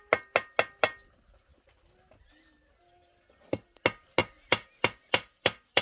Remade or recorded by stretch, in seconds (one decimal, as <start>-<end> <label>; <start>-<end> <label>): 0.0-5.8 recorded